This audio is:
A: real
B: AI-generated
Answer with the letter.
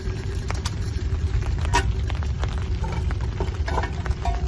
B